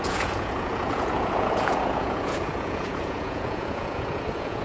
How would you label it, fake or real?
fake